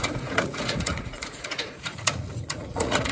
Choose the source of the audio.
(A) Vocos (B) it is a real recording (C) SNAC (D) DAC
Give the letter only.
A